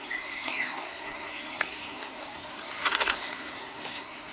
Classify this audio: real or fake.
fake